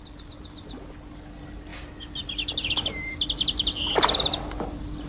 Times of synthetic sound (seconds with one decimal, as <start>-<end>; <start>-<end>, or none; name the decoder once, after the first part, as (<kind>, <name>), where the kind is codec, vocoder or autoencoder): none